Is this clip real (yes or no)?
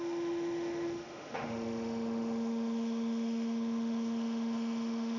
no